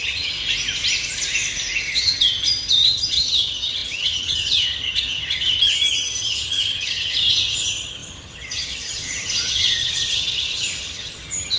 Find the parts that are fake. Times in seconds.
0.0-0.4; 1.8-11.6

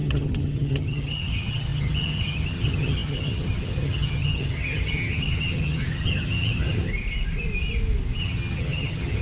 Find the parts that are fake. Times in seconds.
0.0-6.9; 8.2-9.2

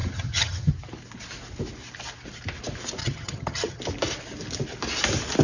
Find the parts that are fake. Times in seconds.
0.0-0.7; 3.0-3.8

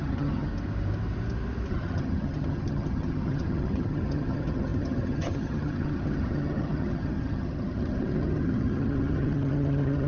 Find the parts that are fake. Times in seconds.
0.0-0.5; 1.7-10.1

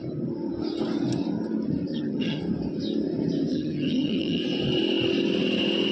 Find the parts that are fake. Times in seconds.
1.9-2.4; 3.5-4.4

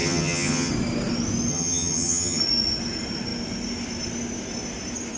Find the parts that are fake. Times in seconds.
0.0-0.7; 1.5-2.4

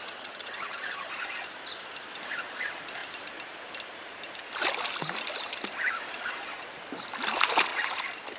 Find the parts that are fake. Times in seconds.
0.0-1.1

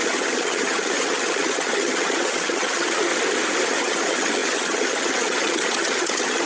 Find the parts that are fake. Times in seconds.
0.0-3.1; 3.7-6.5